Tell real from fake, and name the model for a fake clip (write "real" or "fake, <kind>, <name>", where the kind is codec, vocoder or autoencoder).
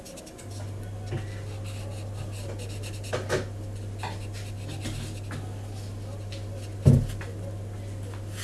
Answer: real